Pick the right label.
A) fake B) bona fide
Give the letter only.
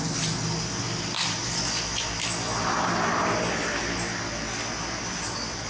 B